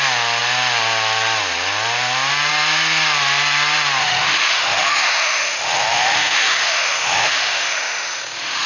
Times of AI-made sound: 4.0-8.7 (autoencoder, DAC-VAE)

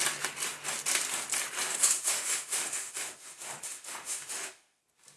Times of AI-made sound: 1.7-4.8 (autoencoder, DAC-VAE)